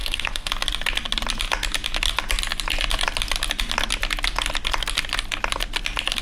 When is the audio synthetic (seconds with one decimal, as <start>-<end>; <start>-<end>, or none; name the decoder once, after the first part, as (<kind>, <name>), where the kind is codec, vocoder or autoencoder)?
0.0-0.5 (codec, SNAC)

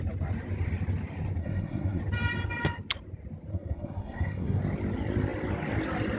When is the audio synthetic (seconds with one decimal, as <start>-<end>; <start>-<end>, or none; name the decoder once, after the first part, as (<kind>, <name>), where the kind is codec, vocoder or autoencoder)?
1.4-2.0 (codec, SNAC); 3.5-4.6

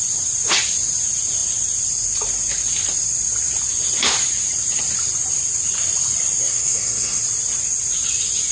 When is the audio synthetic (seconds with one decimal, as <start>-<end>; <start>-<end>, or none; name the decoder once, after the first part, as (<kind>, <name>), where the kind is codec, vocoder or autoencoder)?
6.4-7.2 (codec, SNAC)

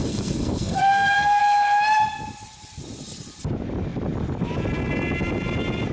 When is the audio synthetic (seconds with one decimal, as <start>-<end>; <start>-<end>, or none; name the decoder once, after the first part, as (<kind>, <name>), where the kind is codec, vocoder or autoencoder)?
0.0-1.4 (codec, SNAC)

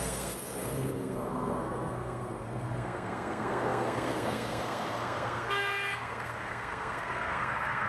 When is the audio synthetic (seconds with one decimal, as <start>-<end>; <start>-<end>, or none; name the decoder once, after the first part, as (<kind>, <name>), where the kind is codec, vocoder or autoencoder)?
0.0-7.9 (codec, SNAC)

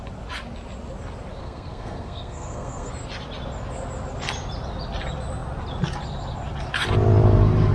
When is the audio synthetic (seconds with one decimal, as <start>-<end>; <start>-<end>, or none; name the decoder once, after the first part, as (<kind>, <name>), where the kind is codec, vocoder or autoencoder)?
1.4-2.9 (codec, SNAC)

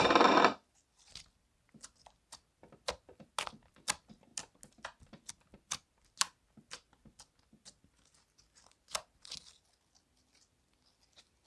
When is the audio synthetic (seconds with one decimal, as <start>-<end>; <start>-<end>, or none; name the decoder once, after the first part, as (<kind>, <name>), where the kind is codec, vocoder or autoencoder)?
none

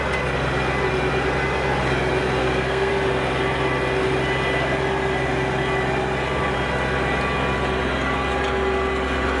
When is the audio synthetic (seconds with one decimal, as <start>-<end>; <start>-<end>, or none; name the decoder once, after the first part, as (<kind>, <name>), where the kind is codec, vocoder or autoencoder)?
2.4-2.9 (codec, SNAC)